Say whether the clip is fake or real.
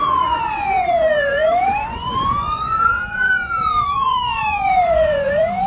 fake